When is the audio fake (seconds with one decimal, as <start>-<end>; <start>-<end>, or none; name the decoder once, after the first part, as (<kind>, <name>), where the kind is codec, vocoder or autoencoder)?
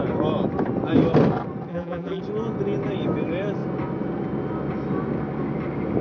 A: 1.7-2.2 (vocoder, BigVGAN v2)